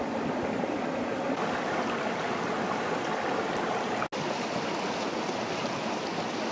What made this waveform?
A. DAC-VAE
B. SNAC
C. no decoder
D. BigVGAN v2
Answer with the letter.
C